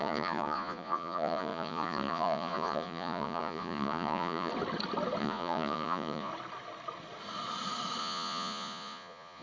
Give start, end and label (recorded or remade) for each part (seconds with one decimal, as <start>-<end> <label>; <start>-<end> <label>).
0.0-4.5 remade; 4.5-5.2 recorded; 5.2-6.3 remade; 6.3-8.0 recorded; 8.0-9.4 remade